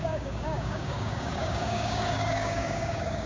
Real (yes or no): no